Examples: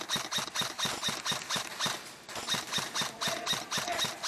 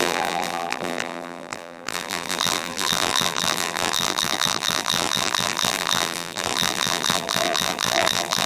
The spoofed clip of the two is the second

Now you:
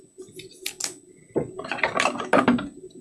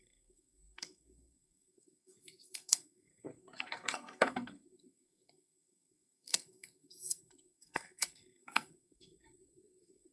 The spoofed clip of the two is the second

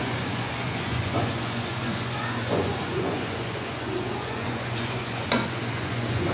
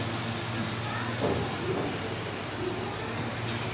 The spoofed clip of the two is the first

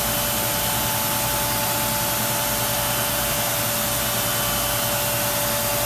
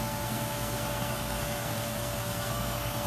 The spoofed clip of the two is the second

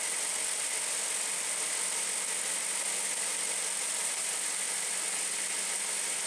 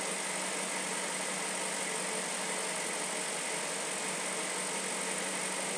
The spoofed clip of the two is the first